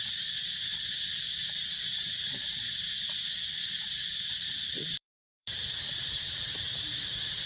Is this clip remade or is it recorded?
remade